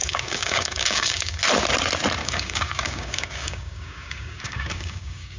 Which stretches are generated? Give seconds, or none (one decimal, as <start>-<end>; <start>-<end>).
0.0-1.4; 2.2-5.4

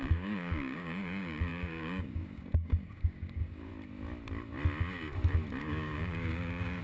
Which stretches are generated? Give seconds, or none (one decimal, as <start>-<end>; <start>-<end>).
0.0-3.7; 5.6-6.8

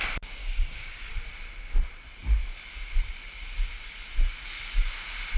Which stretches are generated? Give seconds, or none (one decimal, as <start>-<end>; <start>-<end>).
0.4-1.1

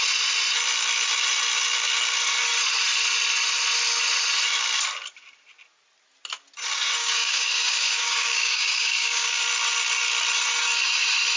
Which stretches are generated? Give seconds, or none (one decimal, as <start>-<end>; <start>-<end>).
7.0-9.4

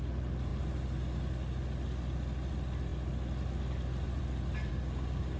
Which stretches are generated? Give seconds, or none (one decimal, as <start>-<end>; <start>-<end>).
4.7-5.4

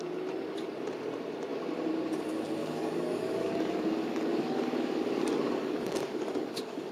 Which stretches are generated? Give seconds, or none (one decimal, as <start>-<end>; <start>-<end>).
2.6-6.9